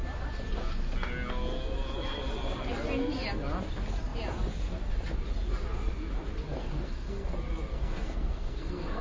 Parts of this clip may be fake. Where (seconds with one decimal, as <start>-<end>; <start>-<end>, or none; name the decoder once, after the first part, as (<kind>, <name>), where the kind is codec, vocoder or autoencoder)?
6.6-7.3 (codec, SNAC); 7.7-9.0